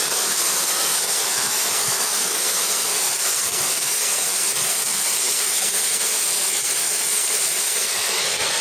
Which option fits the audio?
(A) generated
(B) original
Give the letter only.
A